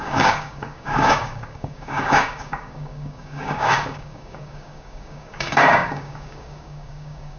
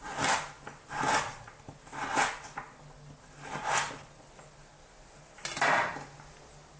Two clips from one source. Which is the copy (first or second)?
first